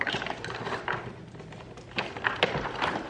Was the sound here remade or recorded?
recorded